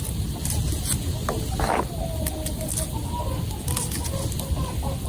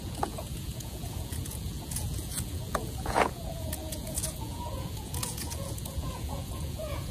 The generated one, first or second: second